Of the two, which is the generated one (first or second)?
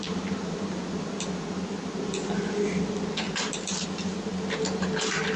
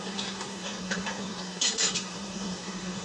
second